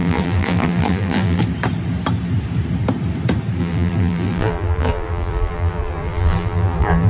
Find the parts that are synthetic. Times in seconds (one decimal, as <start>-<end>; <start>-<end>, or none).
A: 0.0-1.4; 3.6-7.1